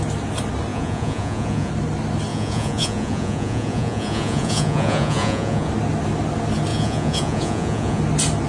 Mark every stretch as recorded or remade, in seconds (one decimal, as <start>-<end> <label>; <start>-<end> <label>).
0.0-0.7 recorded; 0.7-1.7 remade; 1.7-2.3 recorded; 2.3-5.7 remade; 5.7-6.7 recorded; 6.7-8.0 remade; 8.0-8.5 recorded